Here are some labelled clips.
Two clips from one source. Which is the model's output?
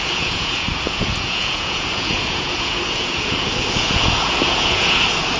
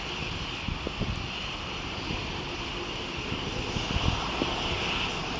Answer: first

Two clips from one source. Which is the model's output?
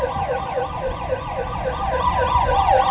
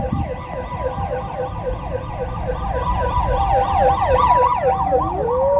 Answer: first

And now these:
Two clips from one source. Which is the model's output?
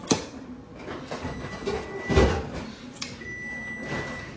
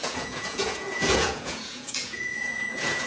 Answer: second